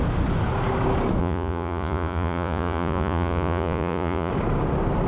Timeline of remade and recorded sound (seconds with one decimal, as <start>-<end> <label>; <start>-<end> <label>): 0.0-1.2 recorded; 1.2-4.3 remade; 4.3-5.1 recorded